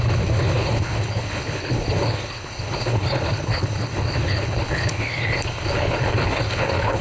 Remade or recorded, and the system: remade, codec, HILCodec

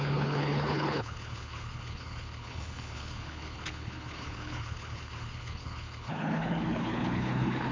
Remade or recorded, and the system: remade, codec, HILCodec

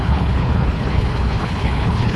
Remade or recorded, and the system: remade, codec, HILCodec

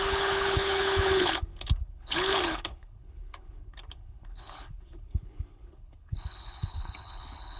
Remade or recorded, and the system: remade, codec, HILCodec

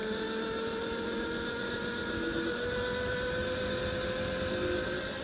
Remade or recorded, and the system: recorded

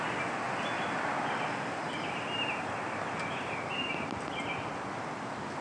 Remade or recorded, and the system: recorded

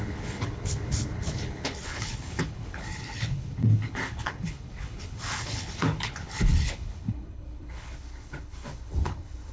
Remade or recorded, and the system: remade, codec, HILCodec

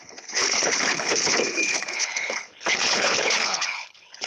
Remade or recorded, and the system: remade, codec, HILCodec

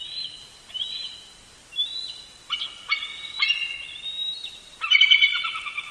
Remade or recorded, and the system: recorded